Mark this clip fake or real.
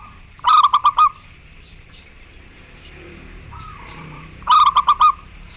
fake